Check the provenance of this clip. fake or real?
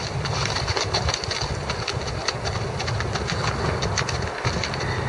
real